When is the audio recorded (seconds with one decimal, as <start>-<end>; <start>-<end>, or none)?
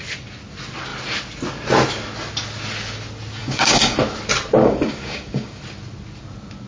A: 0.0-3.4; 4.0-4.6; 5.6-6.7